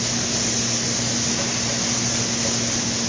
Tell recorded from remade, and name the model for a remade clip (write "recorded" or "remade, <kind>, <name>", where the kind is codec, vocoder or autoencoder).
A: recorded